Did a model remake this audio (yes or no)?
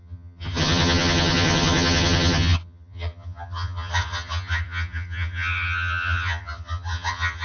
yes